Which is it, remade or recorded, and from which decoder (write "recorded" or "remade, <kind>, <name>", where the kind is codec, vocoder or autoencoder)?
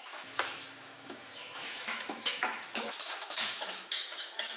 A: remade, autoencoder, DAC-VAE